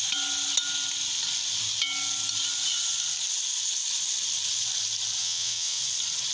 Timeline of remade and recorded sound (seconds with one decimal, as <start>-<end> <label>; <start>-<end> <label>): 0.0-5.2 recorded; 5.2-5.8 remade; 5.8-6.3 recorded